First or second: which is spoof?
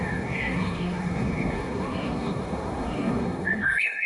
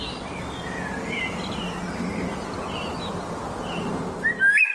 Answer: first